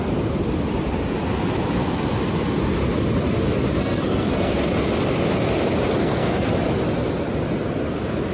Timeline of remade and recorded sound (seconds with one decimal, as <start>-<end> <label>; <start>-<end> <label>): 0.0-3.8 recorded; 3.8-4.6 remade; 4.6-6.0 recorded; 6.0-6.5 remade; 6.5-8.3 recorded